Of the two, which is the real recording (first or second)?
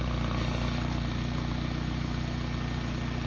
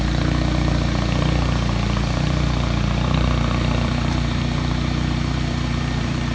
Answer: first